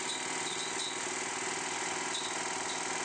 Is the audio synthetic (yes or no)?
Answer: no